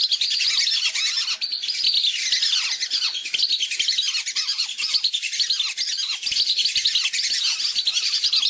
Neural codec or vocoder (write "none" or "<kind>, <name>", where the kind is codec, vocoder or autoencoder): none